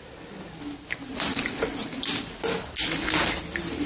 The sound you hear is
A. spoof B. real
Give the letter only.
B